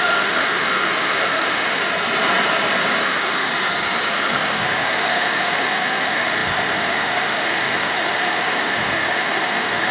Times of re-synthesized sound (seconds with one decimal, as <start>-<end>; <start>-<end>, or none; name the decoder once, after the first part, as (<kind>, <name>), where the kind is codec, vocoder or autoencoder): 0.0-1.9 (autoencoder, DAC-VAE); 3.0-3.5; 4.1-9.9